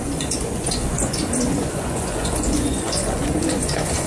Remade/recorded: remade